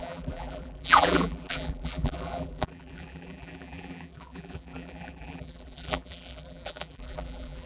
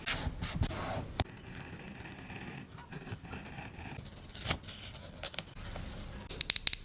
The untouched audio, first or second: second